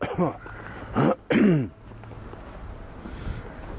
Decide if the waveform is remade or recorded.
recorded